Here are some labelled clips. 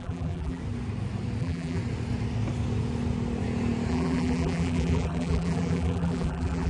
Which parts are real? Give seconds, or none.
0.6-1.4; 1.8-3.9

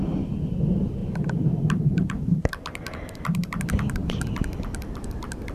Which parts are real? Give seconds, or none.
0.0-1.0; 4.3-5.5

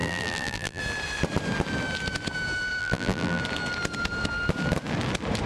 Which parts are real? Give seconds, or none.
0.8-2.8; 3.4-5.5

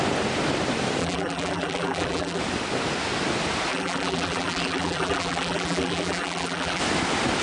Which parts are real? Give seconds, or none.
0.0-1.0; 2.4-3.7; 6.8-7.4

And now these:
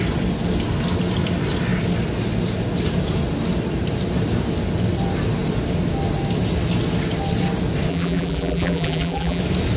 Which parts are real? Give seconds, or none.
0.0-7.9; 9.4-9.8

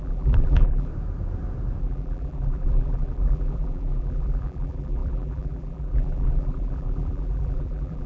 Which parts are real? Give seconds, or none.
0.9-1.8